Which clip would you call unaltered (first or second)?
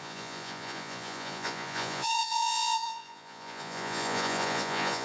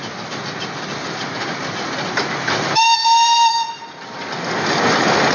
second